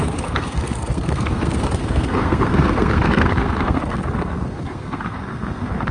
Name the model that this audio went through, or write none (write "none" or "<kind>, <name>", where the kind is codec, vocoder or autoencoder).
codec, SNAC